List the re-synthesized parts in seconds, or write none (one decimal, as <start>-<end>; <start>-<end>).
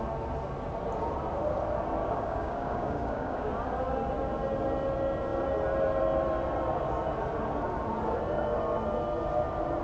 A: 2.0-3.5